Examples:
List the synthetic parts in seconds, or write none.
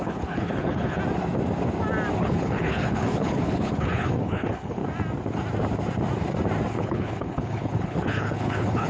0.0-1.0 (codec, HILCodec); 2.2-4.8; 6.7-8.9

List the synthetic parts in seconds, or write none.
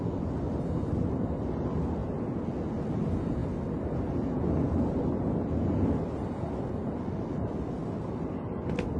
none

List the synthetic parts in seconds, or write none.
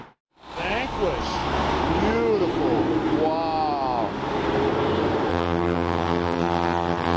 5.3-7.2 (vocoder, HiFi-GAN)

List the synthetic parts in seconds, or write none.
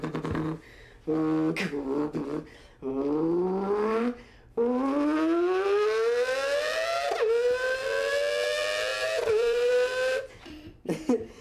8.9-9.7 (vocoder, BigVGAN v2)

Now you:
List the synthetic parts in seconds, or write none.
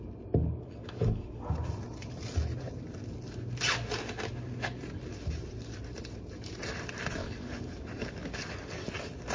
0.4-1.5 (codec, DAC); 7.2-8.9